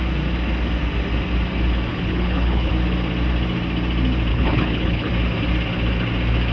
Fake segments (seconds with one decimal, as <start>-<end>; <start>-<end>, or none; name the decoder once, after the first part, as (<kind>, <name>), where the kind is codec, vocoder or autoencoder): 1.9-2.7 (codec, HILCodec); 4.3-5.1